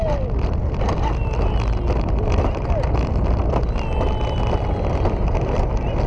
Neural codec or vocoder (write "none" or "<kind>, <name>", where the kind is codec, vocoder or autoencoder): none